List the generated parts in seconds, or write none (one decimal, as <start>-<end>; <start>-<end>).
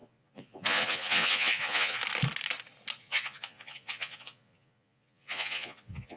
0.0-2.0; 3.0-6.2